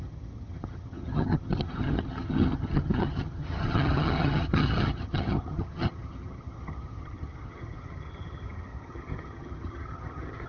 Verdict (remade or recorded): remade